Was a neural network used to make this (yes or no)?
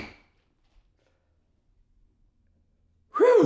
no